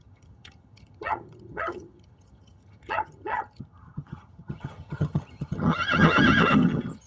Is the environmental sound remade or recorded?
remade